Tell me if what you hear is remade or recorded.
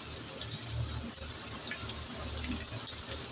recorded